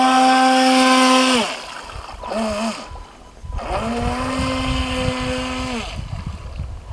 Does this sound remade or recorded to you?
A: recorded